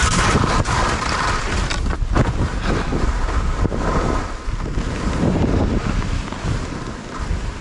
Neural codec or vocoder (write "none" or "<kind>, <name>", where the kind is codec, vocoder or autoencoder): none